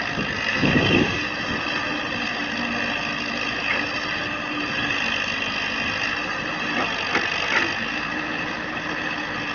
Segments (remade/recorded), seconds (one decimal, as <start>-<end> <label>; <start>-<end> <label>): 0.0-0.5 recorded; 0.5-1.2 remade; 1.2-9.5 recorded